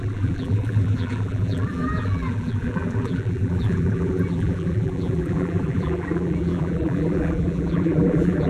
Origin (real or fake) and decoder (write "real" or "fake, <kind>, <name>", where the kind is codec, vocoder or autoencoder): fake, vocoder, BigVGAN v2